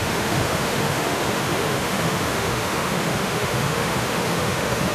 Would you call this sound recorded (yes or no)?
no